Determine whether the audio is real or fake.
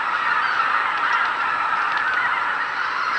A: real